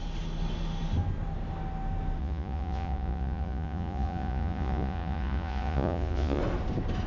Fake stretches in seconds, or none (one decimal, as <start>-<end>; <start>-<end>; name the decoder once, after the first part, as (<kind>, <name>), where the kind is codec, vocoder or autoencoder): 2.2-6.4 (vocoder, Vocos)